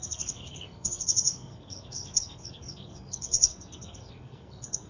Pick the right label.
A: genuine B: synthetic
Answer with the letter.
B